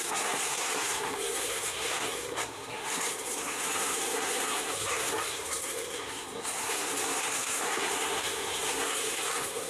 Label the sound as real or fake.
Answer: fake